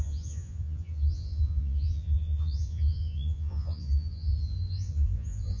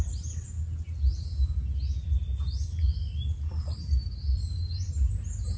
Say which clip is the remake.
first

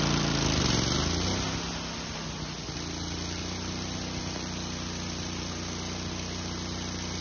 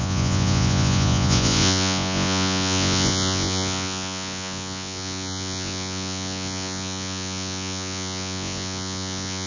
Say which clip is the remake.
second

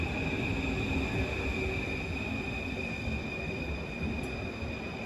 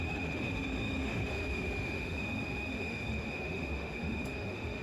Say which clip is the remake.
second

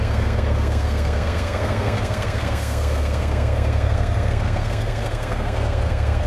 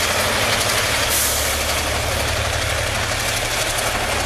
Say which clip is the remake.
first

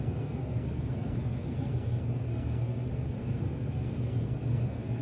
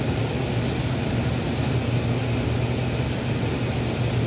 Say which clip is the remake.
first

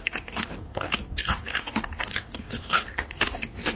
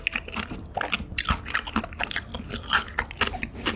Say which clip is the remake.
first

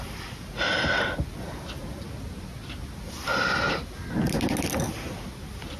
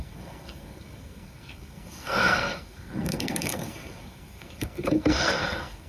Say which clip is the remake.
second